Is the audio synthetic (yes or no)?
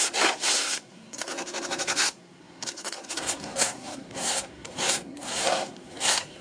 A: yes